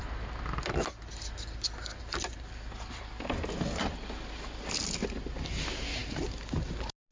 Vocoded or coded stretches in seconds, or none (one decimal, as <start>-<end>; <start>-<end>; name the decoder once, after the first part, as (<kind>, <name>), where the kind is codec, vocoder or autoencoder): none

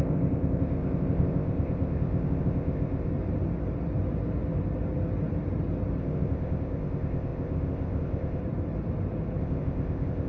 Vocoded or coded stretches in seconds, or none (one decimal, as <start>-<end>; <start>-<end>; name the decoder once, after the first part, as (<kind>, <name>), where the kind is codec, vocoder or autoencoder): 0.0-3.1 (codec, ZipCodec); 6.0-8.4; 9.4-10.3

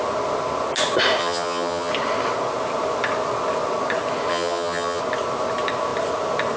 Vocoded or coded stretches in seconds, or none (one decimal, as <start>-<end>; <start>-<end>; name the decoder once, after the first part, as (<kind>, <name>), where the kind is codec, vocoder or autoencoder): 1.2-1.9 (vocoder, HiFi-GAN); 4.3-5.0

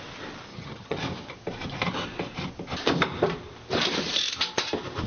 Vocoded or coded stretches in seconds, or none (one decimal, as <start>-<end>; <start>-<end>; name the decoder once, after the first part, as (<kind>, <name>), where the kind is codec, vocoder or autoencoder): 0.5-1.0 (vocoder, HiFi-GAN)